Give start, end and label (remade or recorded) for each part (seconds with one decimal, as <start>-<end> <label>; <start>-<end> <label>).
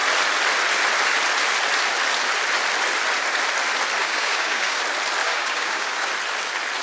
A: 0.0-4.0 recorded; 4.0-4.8 remade; 4.8-5.2 recorded; 5.2-6.1 remade; 6.1-6.8 recorded